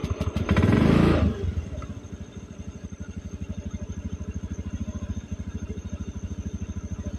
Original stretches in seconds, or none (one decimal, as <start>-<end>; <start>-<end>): 0.0-7.2